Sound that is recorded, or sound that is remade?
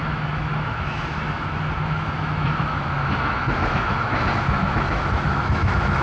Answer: remade